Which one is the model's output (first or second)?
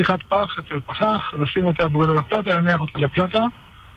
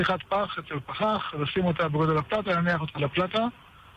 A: first